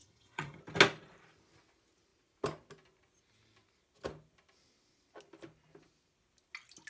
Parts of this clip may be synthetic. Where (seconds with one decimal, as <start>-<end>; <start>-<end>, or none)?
0.0-0.6